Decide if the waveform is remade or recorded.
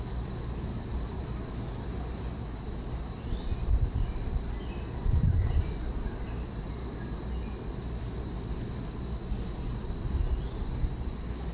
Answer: recorded